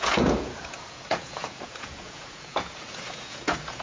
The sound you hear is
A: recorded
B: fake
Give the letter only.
B